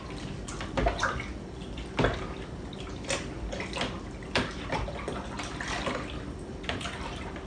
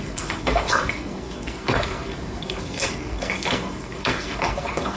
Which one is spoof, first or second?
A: second